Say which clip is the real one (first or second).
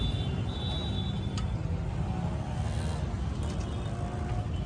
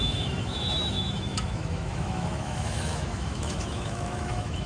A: first